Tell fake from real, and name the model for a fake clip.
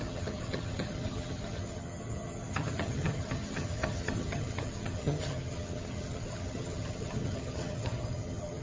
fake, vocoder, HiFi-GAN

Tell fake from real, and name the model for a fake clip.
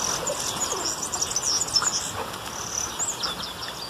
real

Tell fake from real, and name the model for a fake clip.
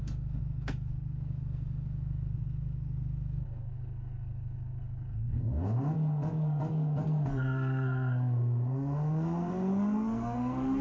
fake, codec, SNAC